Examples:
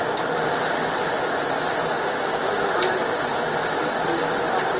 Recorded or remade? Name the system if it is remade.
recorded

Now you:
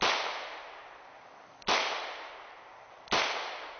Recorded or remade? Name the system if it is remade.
recorded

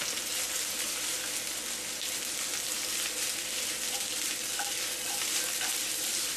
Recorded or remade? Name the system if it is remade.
recorded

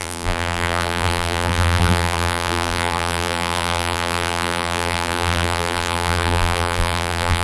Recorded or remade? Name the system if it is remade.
remade, vocoder, BigVGAN v2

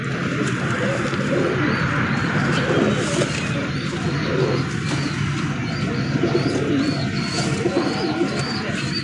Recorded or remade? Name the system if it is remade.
recorded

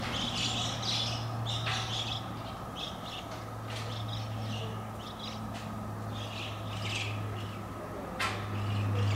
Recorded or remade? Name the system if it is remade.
recorded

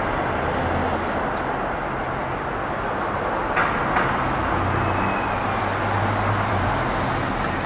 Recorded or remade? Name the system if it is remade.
recorded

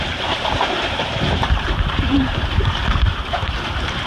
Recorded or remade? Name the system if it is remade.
remade, vocoder, BigVGAN v2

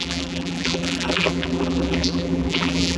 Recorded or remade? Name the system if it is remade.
remade, vocoder, BigVGAN v2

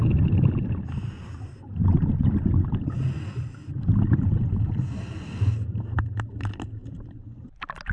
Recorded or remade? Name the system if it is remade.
recorded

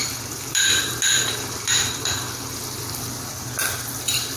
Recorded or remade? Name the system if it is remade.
remade, vocoder, BigVGAN v2